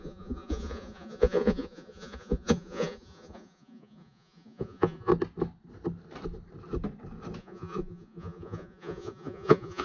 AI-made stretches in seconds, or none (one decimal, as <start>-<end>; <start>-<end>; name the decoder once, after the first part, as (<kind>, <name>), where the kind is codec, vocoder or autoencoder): 0.0-5.1 (vocoder, Vocos); 7.4-9.8